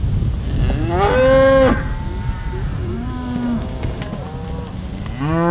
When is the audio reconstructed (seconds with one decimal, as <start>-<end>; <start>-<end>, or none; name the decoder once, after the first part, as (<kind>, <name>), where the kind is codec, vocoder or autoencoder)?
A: 2.8-4.0 (codec, DAC)